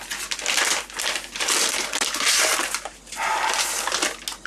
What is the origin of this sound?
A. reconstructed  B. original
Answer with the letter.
B